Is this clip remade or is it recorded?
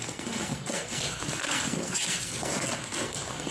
remade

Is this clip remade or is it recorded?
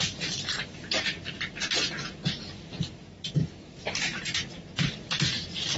remade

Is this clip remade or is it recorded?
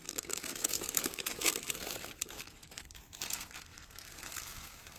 remade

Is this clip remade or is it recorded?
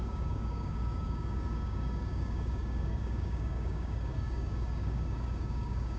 remade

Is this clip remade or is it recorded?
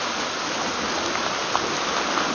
recorded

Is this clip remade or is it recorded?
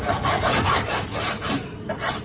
recorded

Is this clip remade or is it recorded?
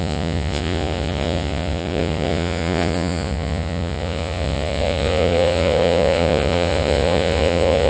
remade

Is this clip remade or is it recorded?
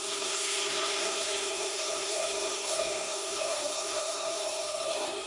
remade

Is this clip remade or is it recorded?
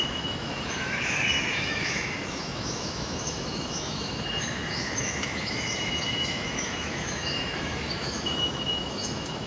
remade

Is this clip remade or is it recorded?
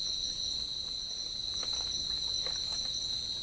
recorded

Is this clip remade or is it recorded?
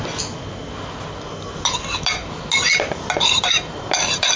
recorded